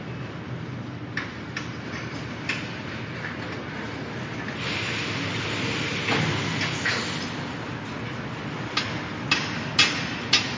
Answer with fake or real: real